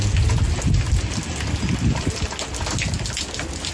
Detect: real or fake real